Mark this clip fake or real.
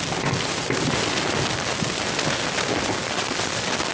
real